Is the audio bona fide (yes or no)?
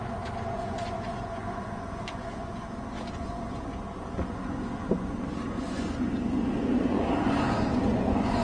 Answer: no